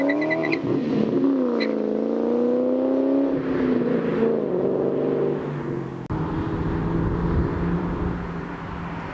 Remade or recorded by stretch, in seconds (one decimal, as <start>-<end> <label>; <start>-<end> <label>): 0.0-0.4 recorded; 0.4-1.0 remade; 1.0-9.1 recorded